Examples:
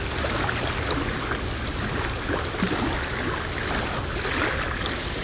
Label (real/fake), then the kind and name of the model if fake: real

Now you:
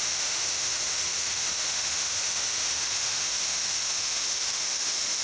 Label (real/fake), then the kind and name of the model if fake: fake, autoencoder, DAC-VAE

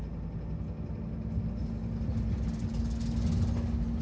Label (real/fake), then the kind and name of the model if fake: real